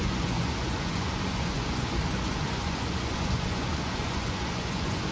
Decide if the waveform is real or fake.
fake